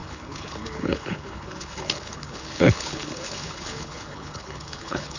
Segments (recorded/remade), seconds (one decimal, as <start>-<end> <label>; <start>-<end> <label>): 0.0-5.2 remade

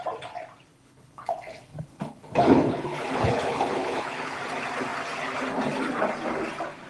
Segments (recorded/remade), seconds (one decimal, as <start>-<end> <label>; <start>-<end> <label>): 0.0-0.7 recorded; 0.7-4.4 remade; 4.4-6.9 recorded

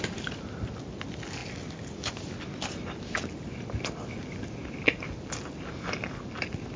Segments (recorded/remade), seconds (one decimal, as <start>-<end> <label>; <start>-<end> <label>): 0.0-6.8 recorded

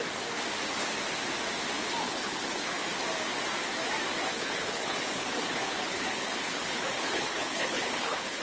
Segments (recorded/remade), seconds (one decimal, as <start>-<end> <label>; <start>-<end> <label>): 0.0-2.0 recorded; 2.0-2.8 remade; 2.8-4.3 recorded; 4.3-8.4 remade

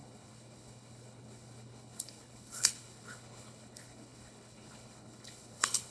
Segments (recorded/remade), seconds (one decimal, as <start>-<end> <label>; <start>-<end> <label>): 0.0-5.9 remade

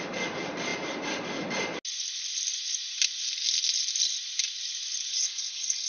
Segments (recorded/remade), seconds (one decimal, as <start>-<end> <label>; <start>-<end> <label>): 0.0-5.1 recorded; 5.1-5.9 remade